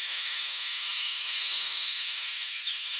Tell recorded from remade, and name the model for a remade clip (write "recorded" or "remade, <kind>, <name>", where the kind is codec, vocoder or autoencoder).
remade, autoencoder, DAC-VAE